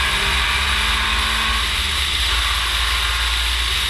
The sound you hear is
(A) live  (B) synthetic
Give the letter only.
A